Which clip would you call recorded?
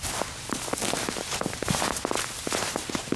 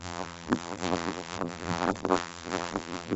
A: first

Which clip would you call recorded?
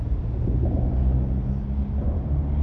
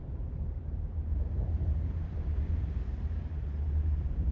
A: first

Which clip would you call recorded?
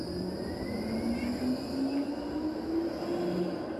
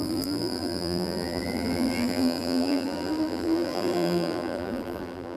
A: first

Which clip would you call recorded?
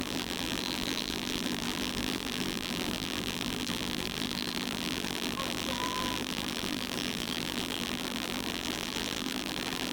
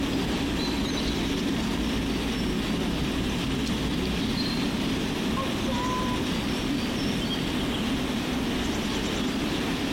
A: second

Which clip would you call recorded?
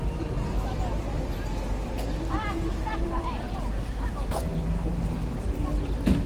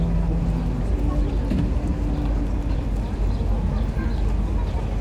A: second